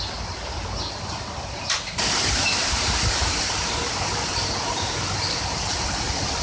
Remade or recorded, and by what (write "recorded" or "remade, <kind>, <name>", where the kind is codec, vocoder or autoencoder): recorded